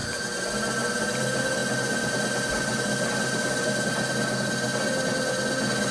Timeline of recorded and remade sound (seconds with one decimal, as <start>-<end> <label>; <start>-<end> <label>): 0.0-5.9 recorded